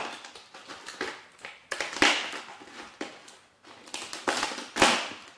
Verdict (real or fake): real